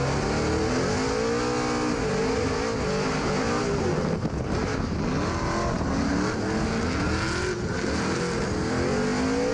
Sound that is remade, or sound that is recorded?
recorded